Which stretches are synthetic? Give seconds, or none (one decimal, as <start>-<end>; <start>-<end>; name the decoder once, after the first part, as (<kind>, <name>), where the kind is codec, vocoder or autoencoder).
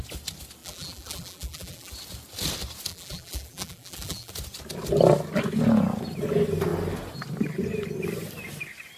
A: 0.6-1.9 (vocoder, BigVGAN v2); 2.9-4.3